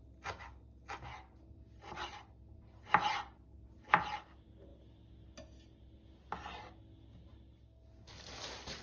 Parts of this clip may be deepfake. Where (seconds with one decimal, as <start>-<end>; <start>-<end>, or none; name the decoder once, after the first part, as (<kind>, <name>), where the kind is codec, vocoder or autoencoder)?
none